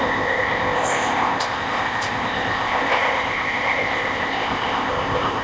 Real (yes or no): no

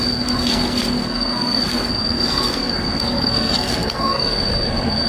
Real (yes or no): no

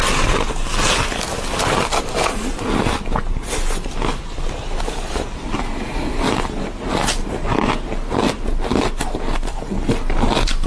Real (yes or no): yes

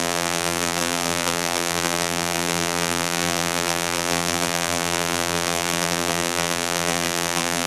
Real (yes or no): no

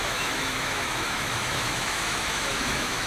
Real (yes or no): no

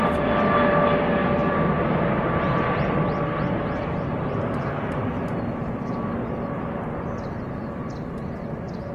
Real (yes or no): yes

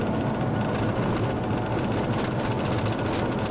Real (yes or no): yes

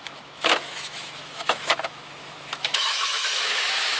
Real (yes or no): no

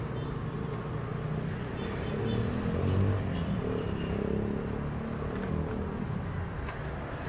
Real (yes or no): yes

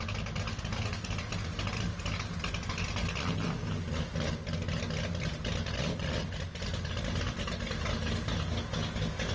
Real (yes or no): yes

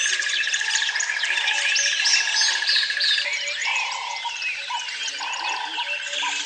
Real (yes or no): yes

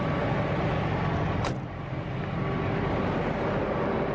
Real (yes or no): yes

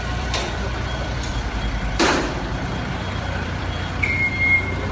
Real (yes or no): no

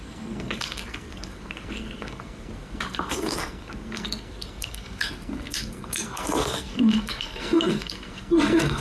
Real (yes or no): no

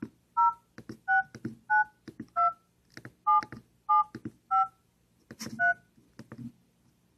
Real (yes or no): yes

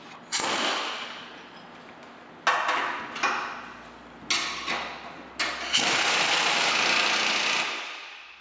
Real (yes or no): yes